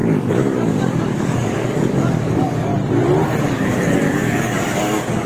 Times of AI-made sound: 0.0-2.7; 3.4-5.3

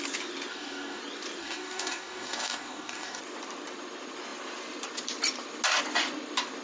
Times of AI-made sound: 0.5-1.0; 1.4-3.2